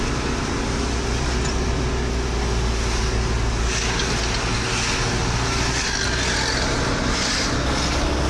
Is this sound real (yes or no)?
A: yes